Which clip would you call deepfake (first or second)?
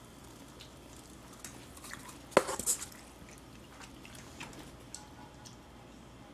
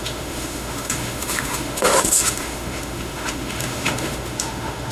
second